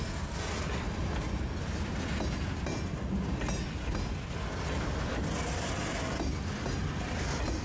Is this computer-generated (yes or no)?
no